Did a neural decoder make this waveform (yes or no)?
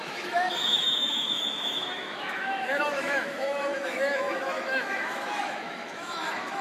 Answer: yes